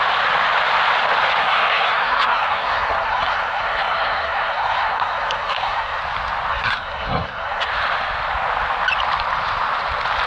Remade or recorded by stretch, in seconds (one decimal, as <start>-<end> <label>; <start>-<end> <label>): 0.0-1.4 recorded; 1.4-6.0 remade; 6.0-6.5 recorded; 6.5-7.7 remade; 7.7-10.3 recorded